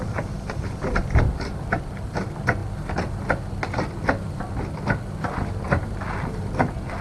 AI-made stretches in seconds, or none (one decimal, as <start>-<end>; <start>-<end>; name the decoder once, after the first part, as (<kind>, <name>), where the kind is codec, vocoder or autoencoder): none

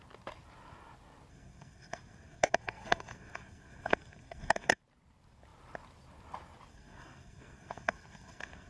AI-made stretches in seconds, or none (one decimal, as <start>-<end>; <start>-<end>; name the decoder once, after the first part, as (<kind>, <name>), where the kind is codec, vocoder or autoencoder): 1.3-4.8 (codec, SNAC); 6.7-8.7

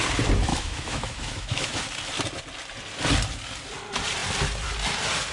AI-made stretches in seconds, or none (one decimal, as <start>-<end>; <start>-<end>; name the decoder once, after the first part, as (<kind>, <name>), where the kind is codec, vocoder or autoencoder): 0.5-1.8 (autoencoder, DAC-VAE)

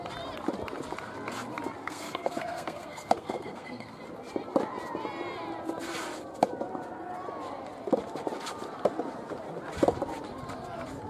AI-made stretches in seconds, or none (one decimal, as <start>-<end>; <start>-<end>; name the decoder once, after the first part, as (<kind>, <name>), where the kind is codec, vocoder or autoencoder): 1.8-4.0 (codec, SNAC)

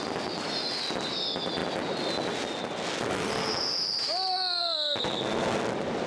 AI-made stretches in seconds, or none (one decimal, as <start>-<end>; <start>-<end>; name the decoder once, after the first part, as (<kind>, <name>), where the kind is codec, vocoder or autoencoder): none

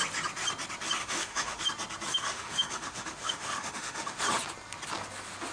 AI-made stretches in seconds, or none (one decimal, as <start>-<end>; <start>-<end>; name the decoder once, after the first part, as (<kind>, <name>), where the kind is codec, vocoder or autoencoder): 1.0-1.6 (autoencoder, DAC-VAE); 2.1-4.2

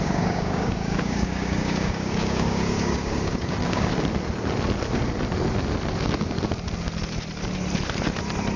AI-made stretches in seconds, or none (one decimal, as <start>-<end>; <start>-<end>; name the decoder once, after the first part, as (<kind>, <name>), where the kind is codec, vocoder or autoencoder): 0.0-3.9 (codec, DAC)

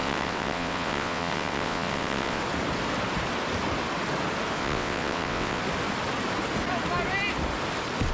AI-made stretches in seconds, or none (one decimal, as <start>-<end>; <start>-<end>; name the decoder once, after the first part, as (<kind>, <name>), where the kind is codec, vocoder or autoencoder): 0.0-2.4 (vocoder, WaveNeXt); 4.6-5.6